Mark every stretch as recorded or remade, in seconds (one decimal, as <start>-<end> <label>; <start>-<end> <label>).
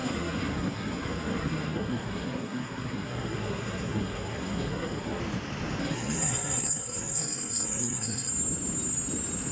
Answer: 0.0-5.2 remade; 5.2-5.8 recorded; 5.8-8.3 remade; 8.3-9.5 recorded